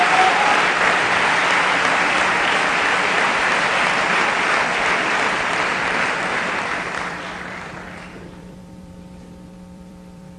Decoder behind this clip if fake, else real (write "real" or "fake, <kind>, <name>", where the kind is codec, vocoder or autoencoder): fake, vocoder, BigVGAN v2